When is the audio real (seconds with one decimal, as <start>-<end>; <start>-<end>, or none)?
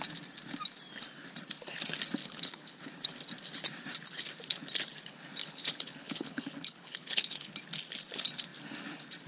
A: 0.0-2.2; 2.9-5.4; 7.5-9.3